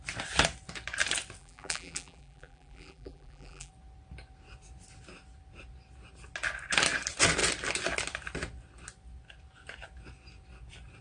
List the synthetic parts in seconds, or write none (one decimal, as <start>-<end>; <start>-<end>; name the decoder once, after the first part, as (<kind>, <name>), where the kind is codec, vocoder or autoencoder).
1.4-3.7 (vocoder, BigVGAN v2)